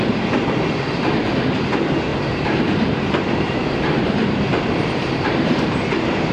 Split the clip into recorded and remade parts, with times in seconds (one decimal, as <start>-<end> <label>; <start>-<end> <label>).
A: 0.0-2.1 recorded; 2.1-6.3 remade